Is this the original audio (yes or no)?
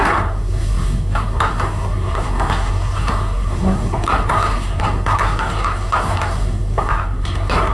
no